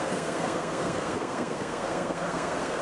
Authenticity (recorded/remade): remade